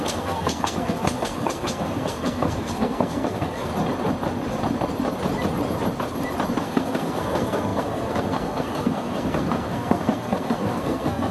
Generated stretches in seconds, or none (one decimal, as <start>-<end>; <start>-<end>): 0.0-3.7; 6.6-11.3